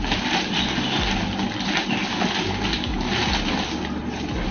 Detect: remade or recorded recorded